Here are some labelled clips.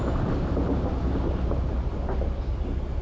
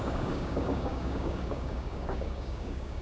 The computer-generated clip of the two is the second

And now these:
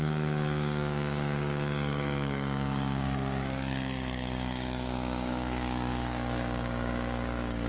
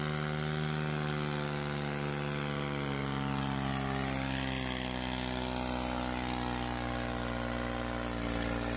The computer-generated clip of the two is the first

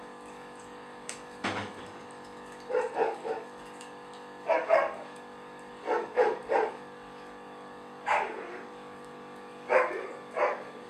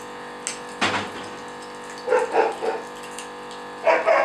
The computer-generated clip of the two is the first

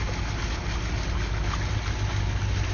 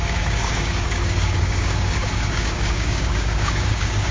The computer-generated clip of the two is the second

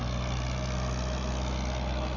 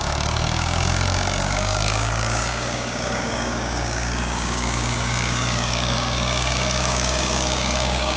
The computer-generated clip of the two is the second